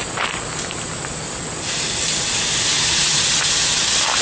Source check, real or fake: real